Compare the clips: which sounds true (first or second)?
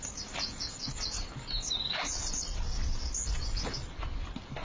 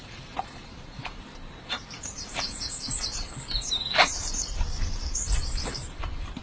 first